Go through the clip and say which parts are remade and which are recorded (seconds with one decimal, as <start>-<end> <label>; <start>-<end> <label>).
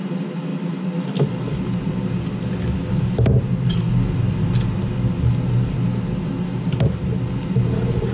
0.0-0.5 recorded; 0.5-2.1 remade; 2.1-8.1 recorded